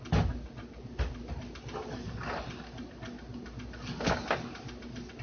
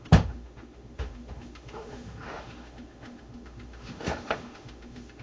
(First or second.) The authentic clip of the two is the first